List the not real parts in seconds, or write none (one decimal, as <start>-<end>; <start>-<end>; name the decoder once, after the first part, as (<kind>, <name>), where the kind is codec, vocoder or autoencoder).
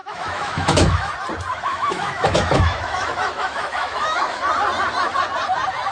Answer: 0.0-1.1 (autoencoder, DAC-VAE); 1.5-4.4